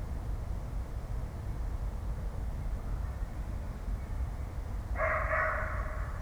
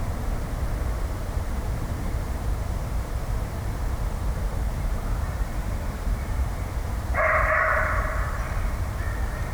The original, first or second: first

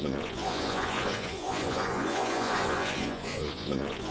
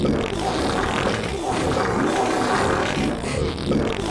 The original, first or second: second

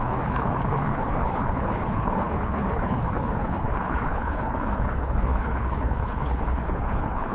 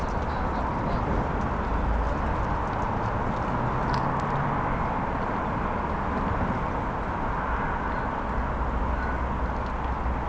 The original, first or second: second